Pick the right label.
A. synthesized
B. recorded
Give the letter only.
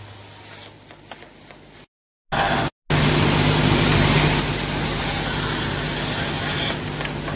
B